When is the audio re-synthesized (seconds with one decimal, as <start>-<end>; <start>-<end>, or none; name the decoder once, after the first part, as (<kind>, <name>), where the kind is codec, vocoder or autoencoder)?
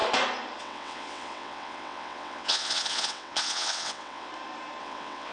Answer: 0.6-4.3 (vocoder, WaveNeXt); 4.8-5.3